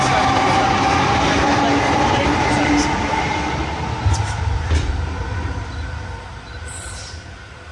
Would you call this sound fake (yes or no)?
no